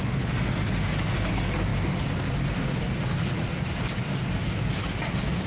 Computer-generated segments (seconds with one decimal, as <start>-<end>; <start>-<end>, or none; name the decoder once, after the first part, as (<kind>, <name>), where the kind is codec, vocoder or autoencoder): 3.2-3.8 (vocoder, Vocos)